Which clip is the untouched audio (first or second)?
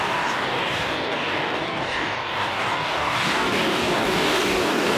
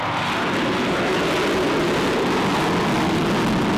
second